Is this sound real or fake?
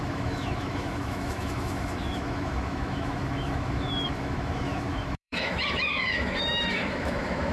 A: fake